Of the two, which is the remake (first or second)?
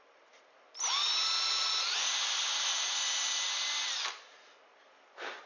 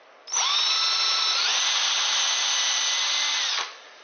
second